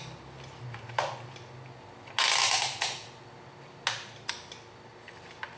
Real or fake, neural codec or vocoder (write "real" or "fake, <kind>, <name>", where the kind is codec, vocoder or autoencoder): real